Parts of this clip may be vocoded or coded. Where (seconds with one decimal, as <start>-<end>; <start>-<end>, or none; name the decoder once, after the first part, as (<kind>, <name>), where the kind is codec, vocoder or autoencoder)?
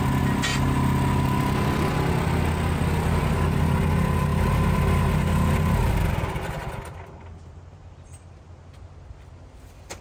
none